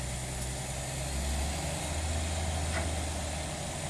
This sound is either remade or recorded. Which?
recorded